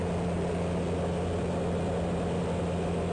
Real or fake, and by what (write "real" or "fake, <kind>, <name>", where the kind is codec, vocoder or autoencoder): real